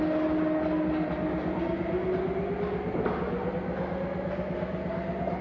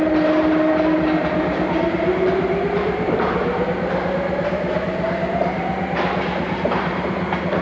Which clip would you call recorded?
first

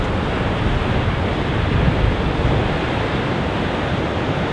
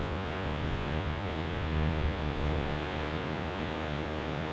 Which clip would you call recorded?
first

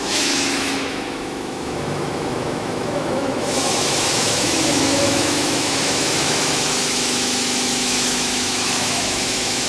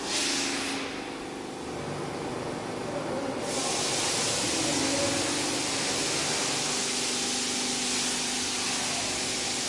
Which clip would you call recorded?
second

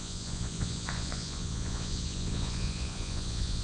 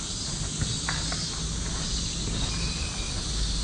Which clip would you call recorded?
second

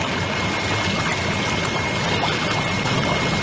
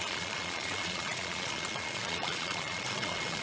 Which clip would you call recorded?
first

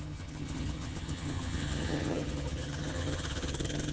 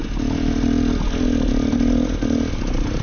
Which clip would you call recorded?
second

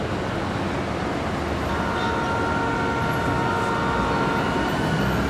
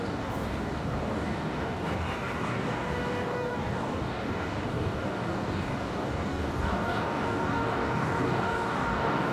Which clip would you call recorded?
first